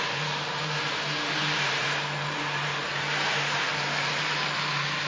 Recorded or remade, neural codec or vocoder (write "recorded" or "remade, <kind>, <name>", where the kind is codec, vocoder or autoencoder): remade, vocoder, BigVGAN v2